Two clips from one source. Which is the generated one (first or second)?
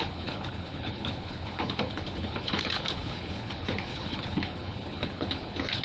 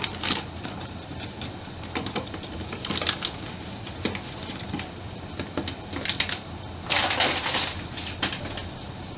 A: first